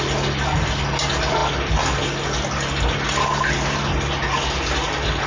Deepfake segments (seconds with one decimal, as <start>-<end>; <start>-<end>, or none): none